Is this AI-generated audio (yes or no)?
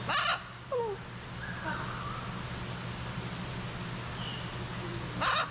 no